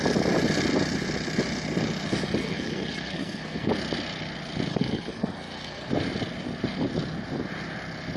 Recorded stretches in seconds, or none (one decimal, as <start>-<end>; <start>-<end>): 0.0-2.4; 3.7-4.7; 5.9-8.2